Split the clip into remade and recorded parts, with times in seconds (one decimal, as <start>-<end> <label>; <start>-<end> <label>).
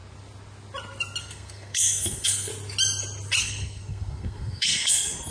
0.0-1.2 recorded; 1.2-2.5 remade; 2.5-3.4 recorded; 3.4-5.3 remade